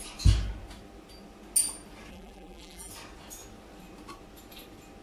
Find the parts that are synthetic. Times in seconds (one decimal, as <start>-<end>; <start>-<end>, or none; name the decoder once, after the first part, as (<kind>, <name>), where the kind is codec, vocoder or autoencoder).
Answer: 2.1-2.9 (vocoder, BigVGAN v2)

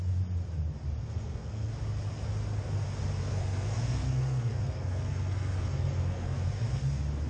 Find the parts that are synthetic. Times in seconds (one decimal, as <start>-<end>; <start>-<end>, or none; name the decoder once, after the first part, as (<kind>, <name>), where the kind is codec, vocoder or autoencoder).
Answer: 1.0-1.7 (codec, SNAC); 3.2-6.8

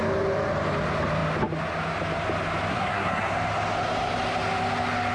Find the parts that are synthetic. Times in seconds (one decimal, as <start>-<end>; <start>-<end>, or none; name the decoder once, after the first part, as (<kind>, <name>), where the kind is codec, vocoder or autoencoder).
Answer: 2.7-3.3 (codec, SNAC)

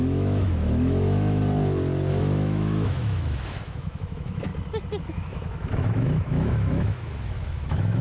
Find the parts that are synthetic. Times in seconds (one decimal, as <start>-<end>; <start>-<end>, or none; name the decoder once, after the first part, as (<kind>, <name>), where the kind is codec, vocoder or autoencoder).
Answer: 0.0-1.4 (autoencoder, DAC-VAE); 2.2-4.5; 5.0-8.0

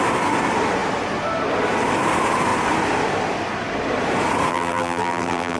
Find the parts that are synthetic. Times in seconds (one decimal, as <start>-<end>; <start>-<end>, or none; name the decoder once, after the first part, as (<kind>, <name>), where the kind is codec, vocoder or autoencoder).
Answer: 4.5-5.6 (vocoder, BigVGAN v2)

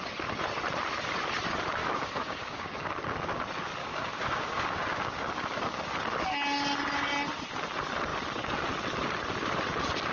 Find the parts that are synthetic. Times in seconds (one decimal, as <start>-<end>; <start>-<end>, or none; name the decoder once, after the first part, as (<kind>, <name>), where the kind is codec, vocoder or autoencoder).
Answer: 1.8-2.9 (codec, DAC); 3.8-5.9